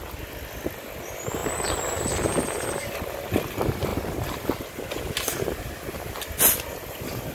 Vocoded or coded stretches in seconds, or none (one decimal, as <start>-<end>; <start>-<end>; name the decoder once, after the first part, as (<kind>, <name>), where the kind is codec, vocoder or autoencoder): none